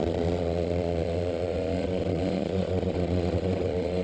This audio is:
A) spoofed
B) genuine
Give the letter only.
A